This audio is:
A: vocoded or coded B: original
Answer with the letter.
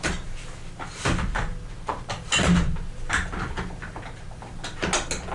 B